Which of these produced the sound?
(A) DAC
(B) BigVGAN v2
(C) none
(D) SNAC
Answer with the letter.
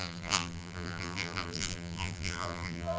B